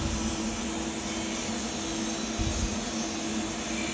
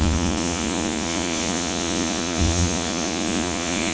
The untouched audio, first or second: first